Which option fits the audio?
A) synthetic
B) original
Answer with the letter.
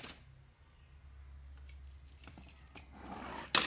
B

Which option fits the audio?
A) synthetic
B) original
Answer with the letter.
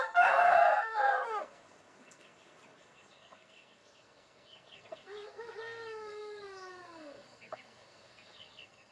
A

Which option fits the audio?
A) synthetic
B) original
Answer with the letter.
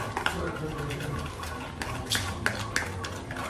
B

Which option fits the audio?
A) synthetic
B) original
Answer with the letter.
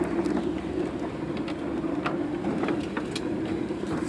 B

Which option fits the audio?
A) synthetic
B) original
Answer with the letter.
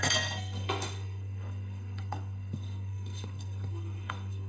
A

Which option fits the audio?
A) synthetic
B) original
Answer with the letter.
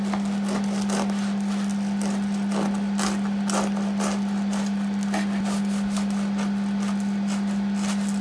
B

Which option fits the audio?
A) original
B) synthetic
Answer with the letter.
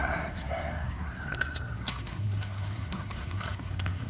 B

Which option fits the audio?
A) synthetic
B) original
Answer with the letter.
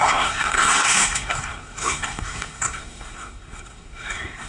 A